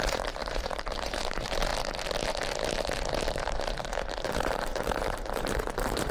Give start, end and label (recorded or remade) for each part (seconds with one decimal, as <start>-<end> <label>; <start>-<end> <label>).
0.0-1.7 remade; 1.7-3.3 recorded; 3.3-6.1 remade

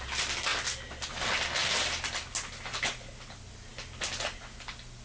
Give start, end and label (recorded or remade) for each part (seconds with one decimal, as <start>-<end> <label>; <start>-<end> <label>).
0.0-5.0 recorded

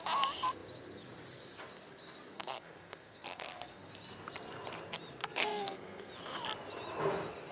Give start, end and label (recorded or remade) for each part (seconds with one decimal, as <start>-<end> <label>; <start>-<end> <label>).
0.0-2.3 recorded; 2.3-3.9 remade; 3.9-5.2 recorded; 5.2-6.1 remade; 6.1-7.5 recorded

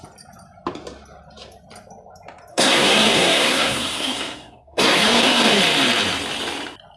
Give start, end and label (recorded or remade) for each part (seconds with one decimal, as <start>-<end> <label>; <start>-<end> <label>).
0.0-2.5 recorded; 2.5-5.6 remade; 5.6-7.0 recorded

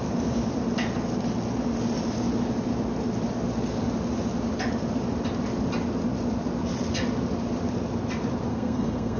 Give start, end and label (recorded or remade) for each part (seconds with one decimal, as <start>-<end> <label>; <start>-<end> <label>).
0.0-8.5 recorded; 8.5-9.2 remade

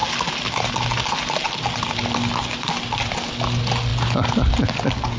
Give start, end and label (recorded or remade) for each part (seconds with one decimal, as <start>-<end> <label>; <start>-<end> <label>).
0.0-5.2 recorded

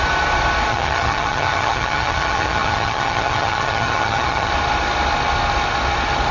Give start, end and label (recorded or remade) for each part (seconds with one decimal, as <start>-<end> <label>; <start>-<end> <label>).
0.0-0.7 recorded; 0.7-4.5 remade; 4.5-6.3 recorded